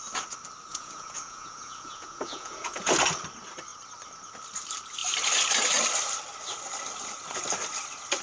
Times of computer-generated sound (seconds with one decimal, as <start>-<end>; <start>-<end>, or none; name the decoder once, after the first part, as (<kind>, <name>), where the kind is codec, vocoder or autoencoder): 0.7-2.9 (vocoder, Vocos)